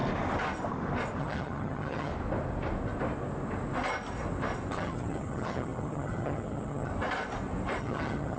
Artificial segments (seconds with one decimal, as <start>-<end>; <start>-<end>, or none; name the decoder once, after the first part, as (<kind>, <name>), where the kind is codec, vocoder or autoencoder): 1.2-2.1 (vocoder, HiFi-GAN); 4.7-6.9; 7.8-8.4

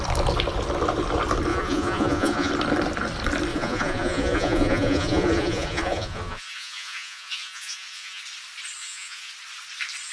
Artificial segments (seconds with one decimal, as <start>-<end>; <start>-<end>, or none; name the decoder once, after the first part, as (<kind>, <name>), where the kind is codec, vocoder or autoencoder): 1.5-2.5 (vocoder, Vocos); 3.5-8.2; 8.8-9.3

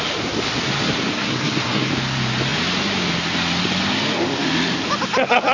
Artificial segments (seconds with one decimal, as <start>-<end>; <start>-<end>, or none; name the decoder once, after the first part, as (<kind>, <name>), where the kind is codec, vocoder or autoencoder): 1.1-1.9 (codec, SNAC)